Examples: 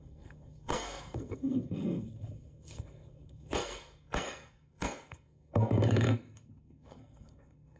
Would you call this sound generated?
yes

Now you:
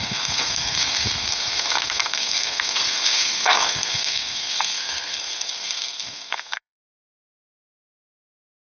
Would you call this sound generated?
yes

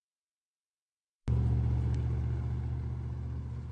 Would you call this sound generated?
no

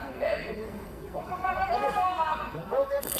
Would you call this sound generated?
yes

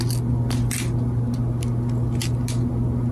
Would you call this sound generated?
no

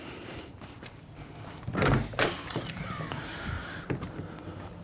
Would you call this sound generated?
no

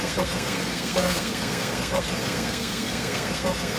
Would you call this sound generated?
yes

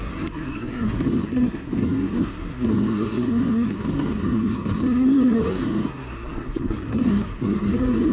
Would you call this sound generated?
yes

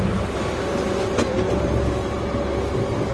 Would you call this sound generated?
no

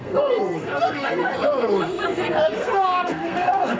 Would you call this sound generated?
yes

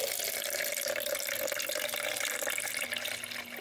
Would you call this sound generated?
no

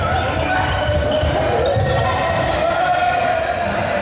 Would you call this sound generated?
no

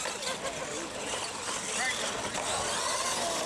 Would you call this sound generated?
no